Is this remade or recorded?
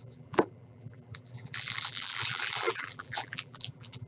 remade